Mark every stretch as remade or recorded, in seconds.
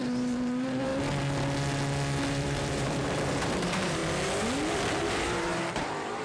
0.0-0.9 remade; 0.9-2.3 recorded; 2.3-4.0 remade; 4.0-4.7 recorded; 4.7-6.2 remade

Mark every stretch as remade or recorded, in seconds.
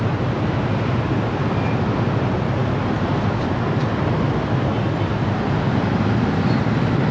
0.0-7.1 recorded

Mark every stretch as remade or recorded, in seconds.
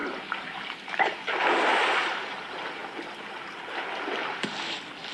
0.0-5.1 recorded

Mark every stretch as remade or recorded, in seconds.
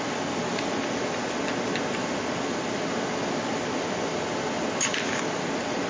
0.0-2.0 recorded; 2.0-5.5 remade; 5.5-5.9 recorded